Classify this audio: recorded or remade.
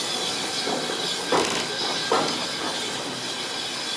recorded